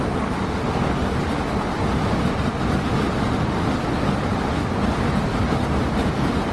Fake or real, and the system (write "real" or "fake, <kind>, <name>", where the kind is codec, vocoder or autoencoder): real